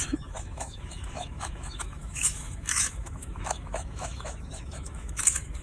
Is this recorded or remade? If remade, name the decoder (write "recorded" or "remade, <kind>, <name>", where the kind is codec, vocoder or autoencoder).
remade, autoencoder, DAC-VAE